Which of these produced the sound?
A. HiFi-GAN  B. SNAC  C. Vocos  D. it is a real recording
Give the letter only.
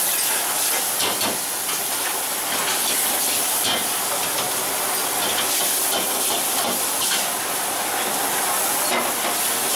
D